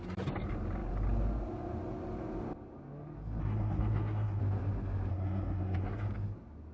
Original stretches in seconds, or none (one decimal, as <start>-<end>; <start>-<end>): 0.0-3.4; 4.4-5.1; 6.1-6.7